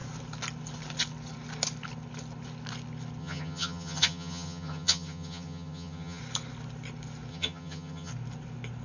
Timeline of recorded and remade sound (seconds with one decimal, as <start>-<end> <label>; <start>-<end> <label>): 0.0-3.2 recorded; 3.2-6.2 remade; 6.2-7.3 recorded; 7.3-8.1 remade; 8.1-8.8 recorded